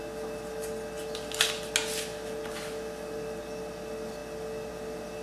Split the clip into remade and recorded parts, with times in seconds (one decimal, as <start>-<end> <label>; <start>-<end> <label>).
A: 0.0-5.2 recorded